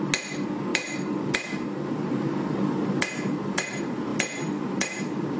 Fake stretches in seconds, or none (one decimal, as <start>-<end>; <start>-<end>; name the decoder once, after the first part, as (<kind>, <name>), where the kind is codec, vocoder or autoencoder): 0.7-2.1 (vocoder, BigVGAN v2); 4.1-5.4